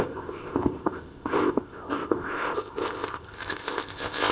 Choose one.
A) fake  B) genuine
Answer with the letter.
A